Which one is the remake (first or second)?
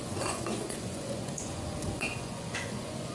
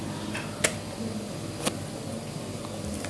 first